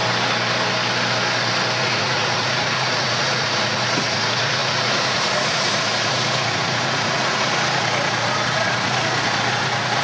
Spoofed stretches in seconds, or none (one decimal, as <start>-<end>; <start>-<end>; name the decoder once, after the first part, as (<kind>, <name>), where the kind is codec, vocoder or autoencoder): 1.8-10.0 (vocoder, Vocos)